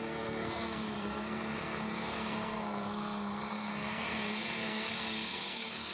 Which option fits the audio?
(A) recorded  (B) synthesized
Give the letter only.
B